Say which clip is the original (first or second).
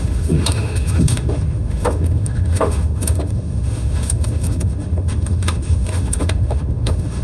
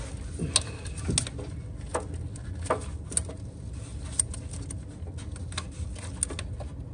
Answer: second